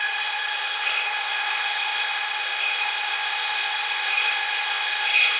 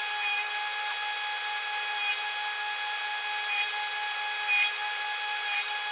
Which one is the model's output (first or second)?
first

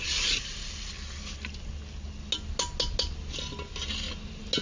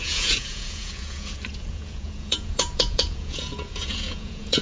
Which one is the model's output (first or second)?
second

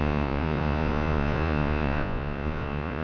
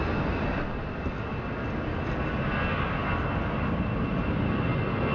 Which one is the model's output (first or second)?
first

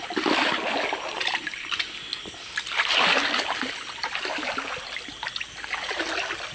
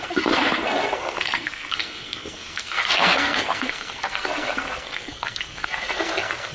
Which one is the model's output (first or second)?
second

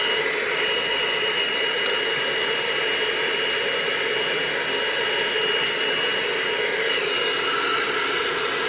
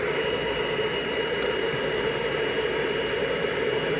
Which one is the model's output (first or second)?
second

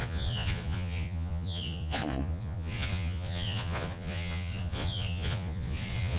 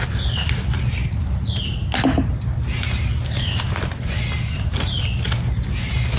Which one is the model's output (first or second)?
first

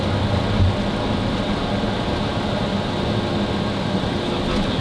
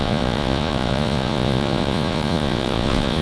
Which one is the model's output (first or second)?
second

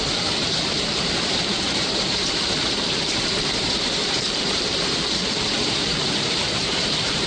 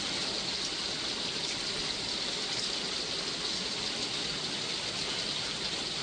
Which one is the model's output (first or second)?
first